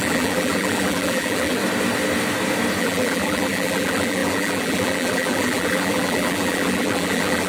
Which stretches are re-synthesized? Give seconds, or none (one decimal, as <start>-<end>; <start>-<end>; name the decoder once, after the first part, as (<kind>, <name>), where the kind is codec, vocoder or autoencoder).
0.0-1.6 (vocoder, BigVGAN v2); 2.8-7.5